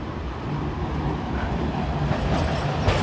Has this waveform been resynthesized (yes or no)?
no